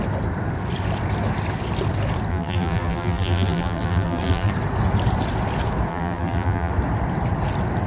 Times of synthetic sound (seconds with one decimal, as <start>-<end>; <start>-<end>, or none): 2.3-4.5; 5.9-6.7